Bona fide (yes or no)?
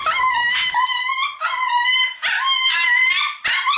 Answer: no